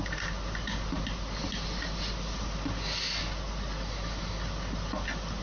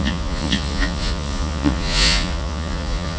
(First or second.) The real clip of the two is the first